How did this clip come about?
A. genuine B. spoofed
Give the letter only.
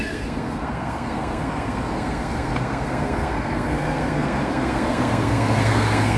B